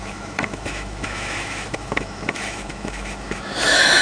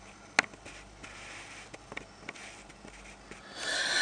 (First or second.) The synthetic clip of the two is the first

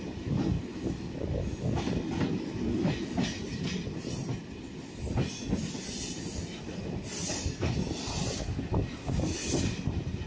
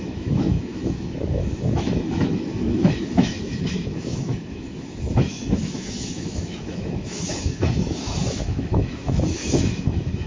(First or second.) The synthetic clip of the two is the second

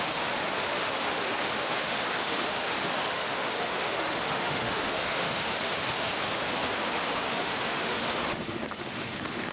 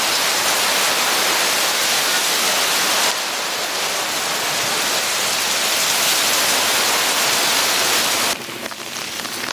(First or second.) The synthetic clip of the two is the first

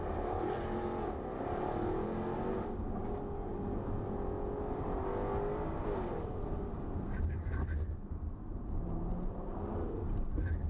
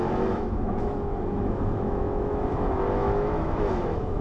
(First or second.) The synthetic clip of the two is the second